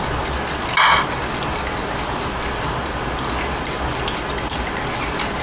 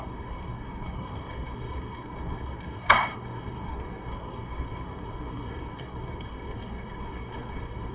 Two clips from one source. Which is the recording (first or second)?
first